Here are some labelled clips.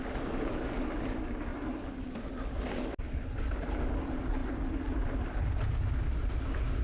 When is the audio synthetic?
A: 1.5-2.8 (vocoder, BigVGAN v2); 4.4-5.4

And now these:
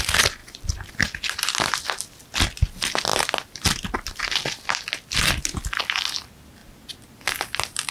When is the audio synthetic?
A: 0.4-0.9 (vocoder, BigVGAN v2)

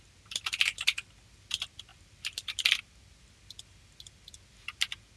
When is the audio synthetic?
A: none

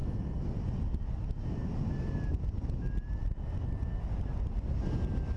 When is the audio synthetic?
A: none

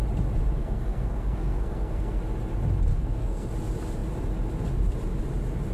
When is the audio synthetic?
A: 0.6-2.2 (codec, SNAC); 2.9-3.5